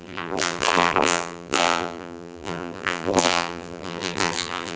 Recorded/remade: remade